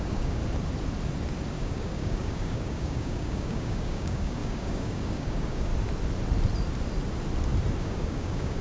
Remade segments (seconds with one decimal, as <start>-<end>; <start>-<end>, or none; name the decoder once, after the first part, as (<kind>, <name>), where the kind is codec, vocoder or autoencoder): 0.0-0.4 (codec, DAC); 1.5-5.7; 7.8-8.6